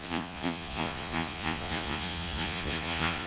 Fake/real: fake